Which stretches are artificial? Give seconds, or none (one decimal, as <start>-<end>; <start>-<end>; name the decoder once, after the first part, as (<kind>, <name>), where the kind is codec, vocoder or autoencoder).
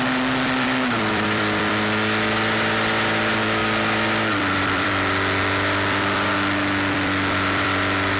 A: 0.0-8.2 (vocoder, BigVGAN v2)